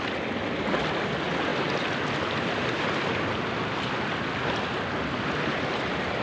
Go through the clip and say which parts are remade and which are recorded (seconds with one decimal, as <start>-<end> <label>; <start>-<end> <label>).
0.0-6.2 recorded